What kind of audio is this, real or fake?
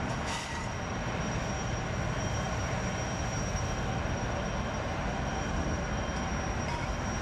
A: real